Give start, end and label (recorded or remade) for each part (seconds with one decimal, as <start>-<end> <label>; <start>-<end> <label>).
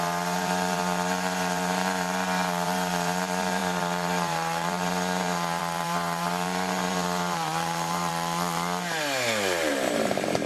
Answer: 0.0-8.1 remade; 8.1-9.7 recorded; 9.7-10.5 remade